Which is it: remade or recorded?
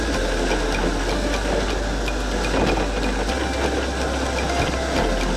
recorded